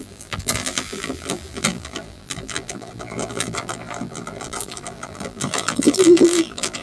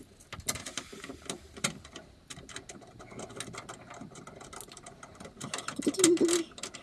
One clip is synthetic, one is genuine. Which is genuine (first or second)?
second